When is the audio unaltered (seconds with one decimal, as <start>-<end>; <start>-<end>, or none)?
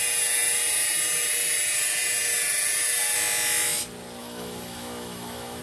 0.0-4.2